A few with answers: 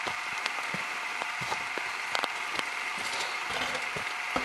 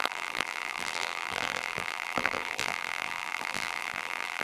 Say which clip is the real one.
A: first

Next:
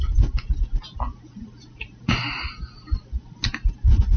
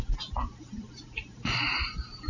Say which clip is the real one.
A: first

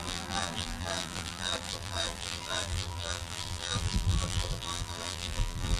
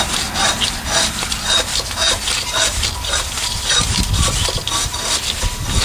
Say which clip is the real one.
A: second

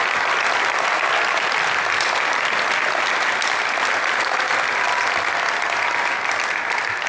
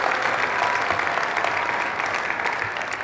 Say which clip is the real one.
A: second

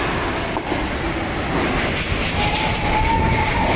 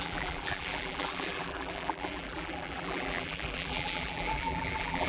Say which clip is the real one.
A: first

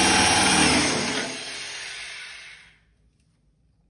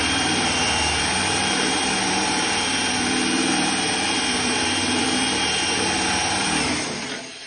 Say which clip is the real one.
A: first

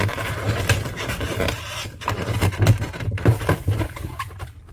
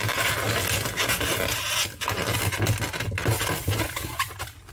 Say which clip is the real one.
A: second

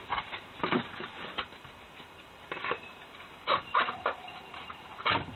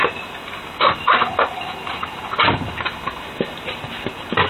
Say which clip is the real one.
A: second